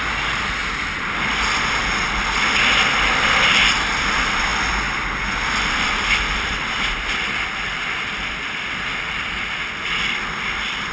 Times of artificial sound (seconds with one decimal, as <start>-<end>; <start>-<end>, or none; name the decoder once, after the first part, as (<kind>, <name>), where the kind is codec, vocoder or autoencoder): none